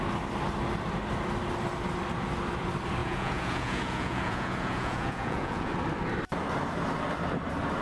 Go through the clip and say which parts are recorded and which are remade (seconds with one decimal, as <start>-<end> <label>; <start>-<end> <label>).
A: 0.0-3.0 recorded; 3.0-5.7 remade; 5.7-7.8 recorded